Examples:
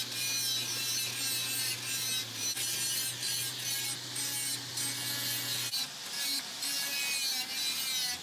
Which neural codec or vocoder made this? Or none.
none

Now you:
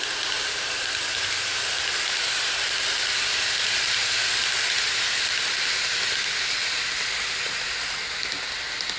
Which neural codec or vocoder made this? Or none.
none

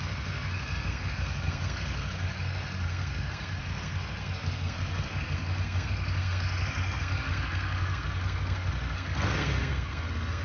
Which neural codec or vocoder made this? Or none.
codec, SNAC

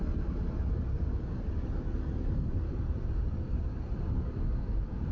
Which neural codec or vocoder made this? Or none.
none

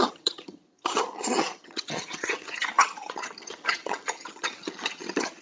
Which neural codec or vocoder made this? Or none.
vocoder, HiFi-GAN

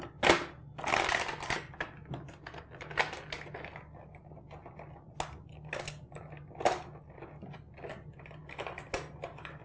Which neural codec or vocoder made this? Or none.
none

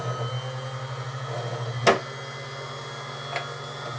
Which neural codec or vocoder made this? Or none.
none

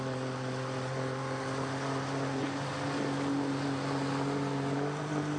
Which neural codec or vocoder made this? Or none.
none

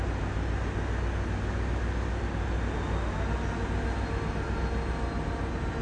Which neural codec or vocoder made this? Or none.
none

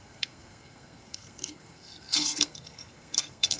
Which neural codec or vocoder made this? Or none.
codec, SNAC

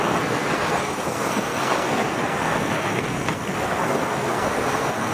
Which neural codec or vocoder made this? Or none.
codec, SNAC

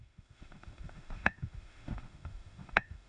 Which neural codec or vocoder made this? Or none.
autoencoder, DAC-VAE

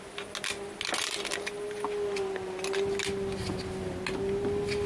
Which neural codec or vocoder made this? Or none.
none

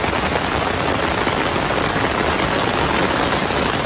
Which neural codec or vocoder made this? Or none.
none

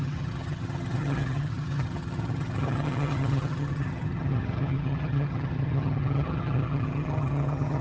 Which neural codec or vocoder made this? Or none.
vocoder, HiFi-GAN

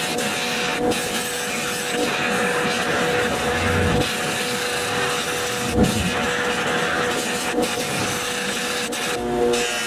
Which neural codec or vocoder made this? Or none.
none